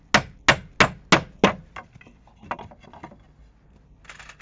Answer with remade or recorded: recorded